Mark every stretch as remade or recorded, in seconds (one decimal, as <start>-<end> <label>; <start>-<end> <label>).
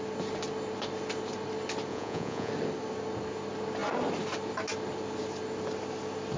0.0-1.9 recorded; 1.9-2.5 remade; 2.5-6.4 recorded